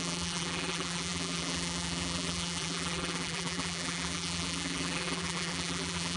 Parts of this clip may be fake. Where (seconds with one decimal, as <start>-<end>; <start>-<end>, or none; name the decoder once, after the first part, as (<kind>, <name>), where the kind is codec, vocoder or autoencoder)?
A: 0.0-6.2 (vocoder, BigVGAN v2)